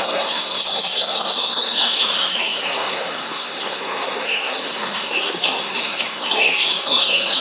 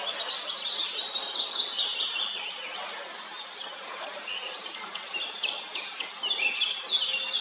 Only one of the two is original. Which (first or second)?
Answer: second